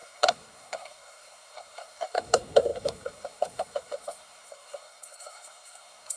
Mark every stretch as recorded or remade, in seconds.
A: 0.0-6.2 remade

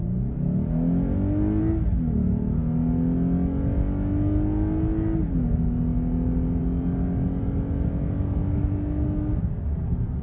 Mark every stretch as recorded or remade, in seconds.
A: 0.0-10.2 recorded

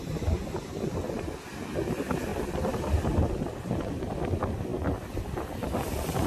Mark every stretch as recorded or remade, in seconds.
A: 0.0-2.3 recorded; 2.3-4.0 remade; 4.0-6.3 recorded

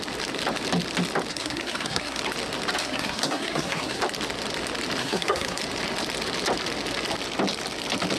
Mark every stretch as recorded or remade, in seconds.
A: 0.0-1.3 recorded; 1.3-2.2 remade; 2.2-2.8 recorded; 2.8-4.0 remade; 4.0-5.0 recorded; 5.0-5.6 remade; 5.6-8.2 recorded